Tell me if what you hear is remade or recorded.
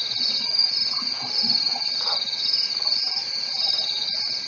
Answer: recorded